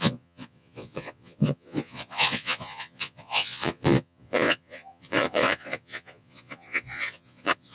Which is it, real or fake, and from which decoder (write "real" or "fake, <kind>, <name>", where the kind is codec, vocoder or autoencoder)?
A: fake, vocoder, Vocos